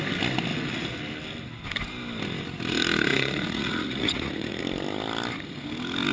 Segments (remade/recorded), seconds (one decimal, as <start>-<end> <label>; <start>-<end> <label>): 0.0-0.5 recorded; 0.5-1.0 remade; 1.0-3.1 recorded; 3.1-4.6 remade; 4.6-6.1 recorded